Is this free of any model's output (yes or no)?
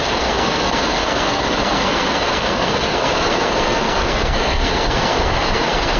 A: no